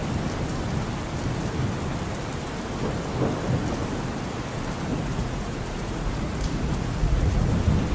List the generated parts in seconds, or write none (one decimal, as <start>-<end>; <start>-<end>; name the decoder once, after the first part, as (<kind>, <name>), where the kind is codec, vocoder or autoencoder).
4.9-7.5 (vocoder, Vocos)